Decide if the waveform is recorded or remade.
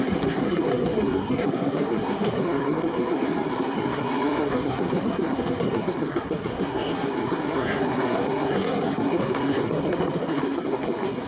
remade